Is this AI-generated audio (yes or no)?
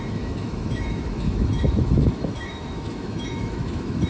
yes